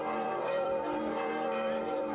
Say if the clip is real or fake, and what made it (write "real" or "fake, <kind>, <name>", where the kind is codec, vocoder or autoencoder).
fake, vocoder, BigVGAN v2